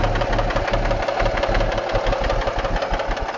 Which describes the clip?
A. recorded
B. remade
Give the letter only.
A